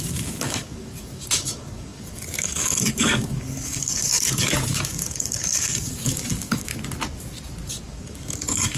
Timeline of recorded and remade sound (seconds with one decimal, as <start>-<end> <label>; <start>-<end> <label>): 0.0-6.7 remade; 6.7-7.7 recorded; 7.7-8.8 remade